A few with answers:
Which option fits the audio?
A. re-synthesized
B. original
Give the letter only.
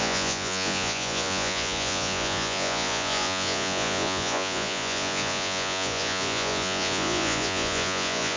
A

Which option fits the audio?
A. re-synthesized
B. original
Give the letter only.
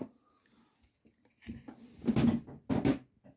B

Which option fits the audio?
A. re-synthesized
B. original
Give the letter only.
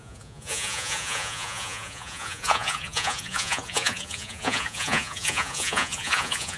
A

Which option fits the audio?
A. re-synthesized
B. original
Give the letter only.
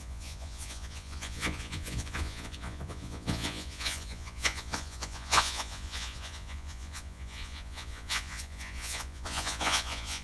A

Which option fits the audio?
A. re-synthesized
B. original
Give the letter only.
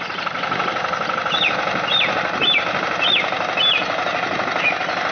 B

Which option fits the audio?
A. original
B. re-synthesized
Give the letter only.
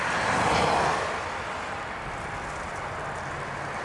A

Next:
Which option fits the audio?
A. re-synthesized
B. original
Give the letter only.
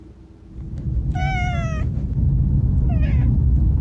B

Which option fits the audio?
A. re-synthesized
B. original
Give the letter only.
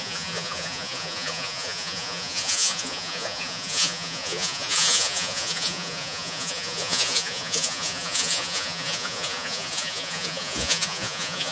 A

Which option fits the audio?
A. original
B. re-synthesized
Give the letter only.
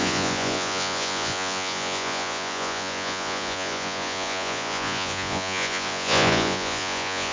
B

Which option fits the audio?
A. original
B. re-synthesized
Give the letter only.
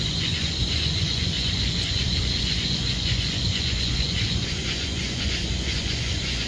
B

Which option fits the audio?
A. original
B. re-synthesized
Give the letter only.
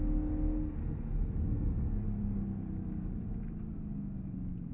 A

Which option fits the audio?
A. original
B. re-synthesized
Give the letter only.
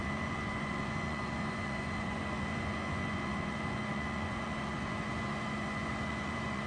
B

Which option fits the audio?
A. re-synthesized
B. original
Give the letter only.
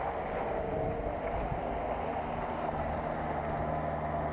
B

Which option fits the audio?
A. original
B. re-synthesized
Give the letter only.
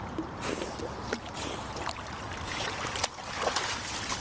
A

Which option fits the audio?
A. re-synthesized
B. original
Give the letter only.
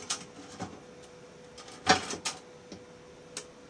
B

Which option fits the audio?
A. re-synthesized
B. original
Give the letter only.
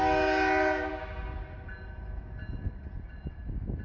B